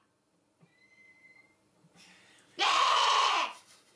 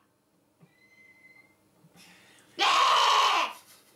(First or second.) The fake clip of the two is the first